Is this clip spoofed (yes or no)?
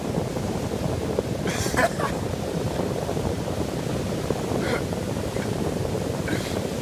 yes